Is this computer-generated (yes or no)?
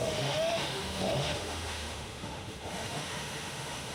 yes